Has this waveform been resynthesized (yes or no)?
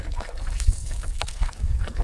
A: yes